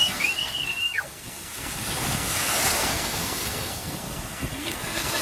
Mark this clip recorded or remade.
remade